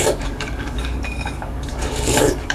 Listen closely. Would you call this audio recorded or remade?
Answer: remade